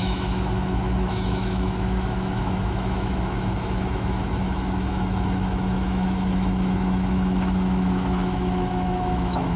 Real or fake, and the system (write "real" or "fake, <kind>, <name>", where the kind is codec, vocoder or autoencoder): fake, autoencoder, DAC-VAE